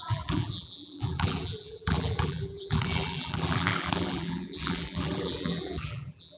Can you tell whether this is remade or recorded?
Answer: remade